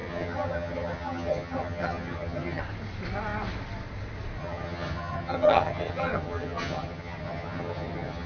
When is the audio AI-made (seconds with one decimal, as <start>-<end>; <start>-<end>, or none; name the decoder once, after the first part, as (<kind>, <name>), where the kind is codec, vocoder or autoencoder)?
0.0-2.6 (vocoder, HiFi-GAN); 4.4-8.3